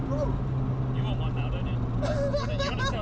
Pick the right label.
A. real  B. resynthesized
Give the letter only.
A